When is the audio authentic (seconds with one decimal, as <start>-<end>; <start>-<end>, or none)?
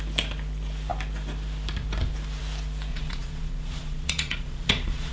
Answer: 0.0-2.9